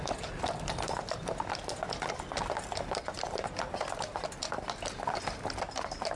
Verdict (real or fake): real